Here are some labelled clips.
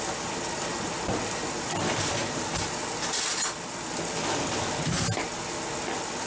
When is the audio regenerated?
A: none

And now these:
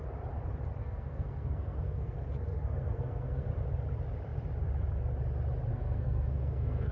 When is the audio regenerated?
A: 0.8-3.5 (codec, SNAC); 5.7-6.9

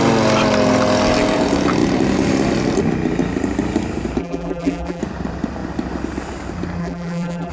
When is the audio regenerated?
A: 4.2-5.0 (vocoder, BigVGAN v2); 6.8-7.5

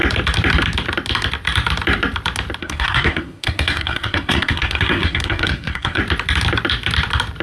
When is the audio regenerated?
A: 2.6-6.0 (codec, SNAC)